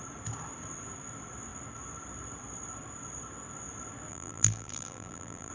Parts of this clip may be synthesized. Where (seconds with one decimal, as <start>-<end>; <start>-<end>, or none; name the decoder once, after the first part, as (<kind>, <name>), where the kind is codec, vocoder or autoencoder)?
4.1-5.5 (vocoder, BigVGAN v2)